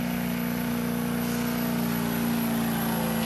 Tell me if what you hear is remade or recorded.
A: recorded